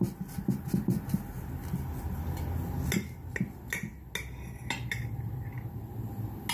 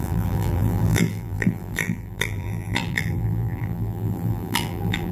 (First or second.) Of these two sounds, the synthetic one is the second